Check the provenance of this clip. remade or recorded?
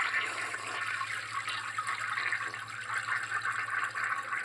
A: recorded